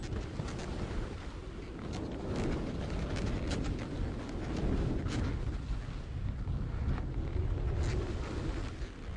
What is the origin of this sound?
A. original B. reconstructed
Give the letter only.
A